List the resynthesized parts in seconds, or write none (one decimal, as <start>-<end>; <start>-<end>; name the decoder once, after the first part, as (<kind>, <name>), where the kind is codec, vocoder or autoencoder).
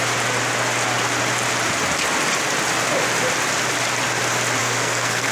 4.6-5.3 (codec, SNAC)